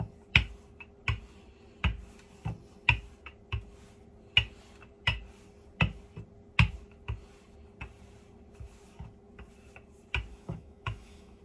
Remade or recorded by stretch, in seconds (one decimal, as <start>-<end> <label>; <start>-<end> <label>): 0.0-10.3 recorded; 10.3-11.4 remade